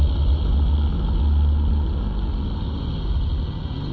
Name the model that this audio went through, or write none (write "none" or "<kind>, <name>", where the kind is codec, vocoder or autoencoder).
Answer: none